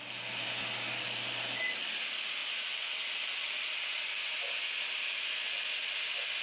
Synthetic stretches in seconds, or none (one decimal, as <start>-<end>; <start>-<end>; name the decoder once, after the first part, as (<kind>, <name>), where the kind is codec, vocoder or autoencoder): none